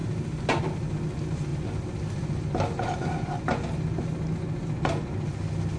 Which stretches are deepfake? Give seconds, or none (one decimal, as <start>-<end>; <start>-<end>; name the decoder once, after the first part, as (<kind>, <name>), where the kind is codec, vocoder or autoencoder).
none